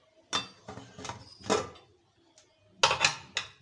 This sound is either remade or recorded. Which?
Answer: recorded